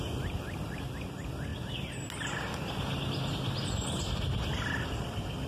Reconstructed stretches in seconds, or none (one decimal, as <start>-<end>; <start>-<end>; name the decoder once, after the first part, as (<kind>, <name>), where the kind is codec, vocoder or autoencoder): none